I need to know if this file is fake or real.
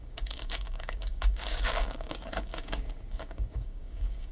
fake